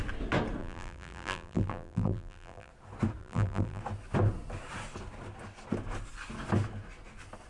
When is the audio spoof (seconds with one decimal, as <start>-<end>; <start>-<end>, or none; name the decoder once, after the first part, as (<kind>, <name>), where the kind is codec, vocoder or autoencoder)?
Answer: 0.6-2.7 (vocoder, BigVGAN v2); 3.2-3.8